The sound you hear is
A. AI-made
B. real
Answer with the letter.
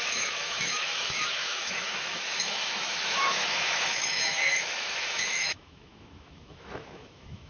A